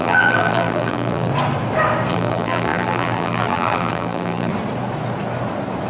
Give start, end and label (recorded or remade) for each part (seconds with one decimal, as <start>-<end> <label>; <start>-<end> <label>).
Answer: 0.0-1.3 remade; 1.3-2.1 recorded; 2.1-4.5 remade; 4.5-5.9 recorded